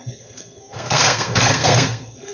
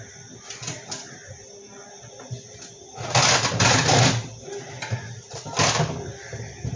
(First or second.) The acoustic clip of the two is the second